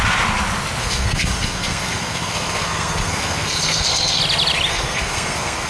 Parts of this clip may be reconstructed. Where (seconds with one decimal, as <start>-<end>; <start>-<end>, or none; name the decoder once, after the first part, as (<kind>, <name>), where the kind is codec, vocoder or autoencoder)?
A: 0.8-4.2 (codec, SNAC); 4.7-5.7